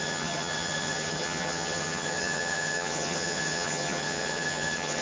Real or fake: fake